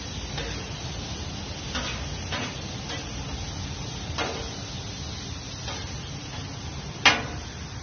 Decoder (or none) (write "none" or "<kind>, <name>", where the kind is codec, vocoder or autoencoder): none